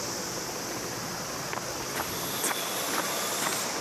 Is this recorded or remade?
recorded